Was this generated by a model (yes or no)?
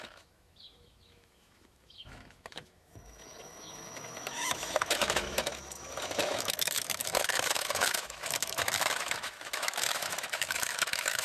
yes